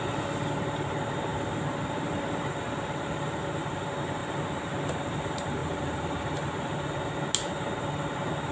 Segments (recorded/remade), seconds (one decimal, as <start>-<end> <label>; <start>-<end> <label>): 0.0-1.3 recorded; 1.3-3.8 remade; 3.8-5.6 recorded; 5.6-6.7 remade; 6.7-8.5 recorded